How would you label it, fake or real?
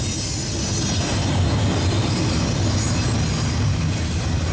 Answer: real